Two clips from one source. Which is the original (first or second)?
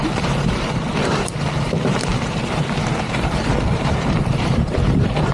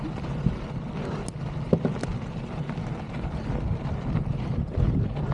second